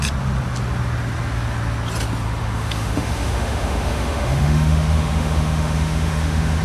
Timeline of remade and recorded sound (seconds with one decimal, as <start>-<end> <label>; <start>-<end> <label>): 0.0-2.4 recorded; 2.4-6.6 remade